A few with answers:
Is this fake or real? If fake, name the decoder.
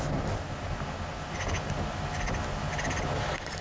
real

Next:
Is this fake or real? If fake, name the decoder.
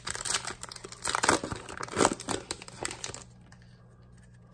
real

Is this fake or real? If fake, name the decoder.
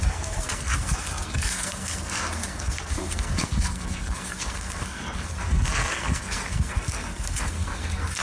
fake, codec, SNAC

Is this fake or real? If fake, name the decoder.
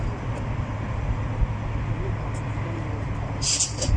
real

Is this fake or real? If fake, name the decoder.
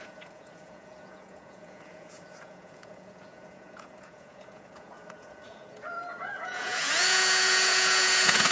fake, vocoder, Vocos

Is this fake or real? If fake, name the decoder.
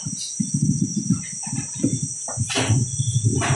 real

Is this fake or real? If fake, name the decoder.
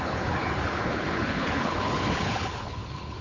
fake, codec, HILCodec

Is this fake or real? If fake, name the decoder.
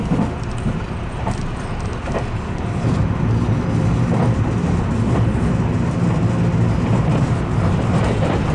real